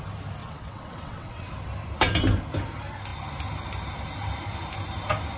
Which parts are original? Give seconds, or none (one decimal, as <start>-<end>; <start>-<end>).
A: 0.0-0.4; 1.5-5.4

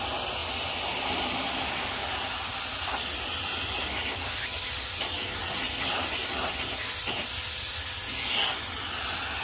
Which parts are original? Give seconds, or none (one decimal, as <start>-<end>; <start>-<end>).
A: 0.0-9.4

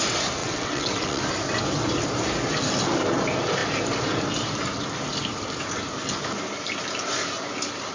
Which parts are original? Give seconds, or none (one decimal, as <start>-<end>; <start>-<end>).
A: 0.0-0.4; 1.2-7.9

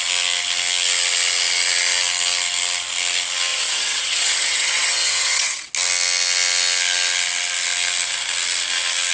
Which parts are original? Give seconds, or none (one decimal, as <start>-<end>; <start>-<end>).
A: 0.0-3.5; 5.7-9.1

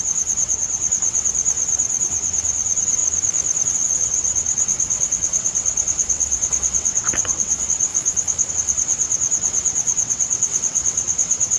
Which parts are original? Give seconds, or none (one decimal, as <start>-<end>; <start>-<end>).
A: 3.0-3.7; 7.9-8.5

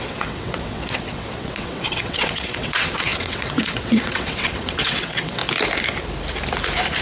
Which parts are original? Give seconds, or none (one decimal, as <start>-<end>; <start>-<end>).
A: 5.4-7.0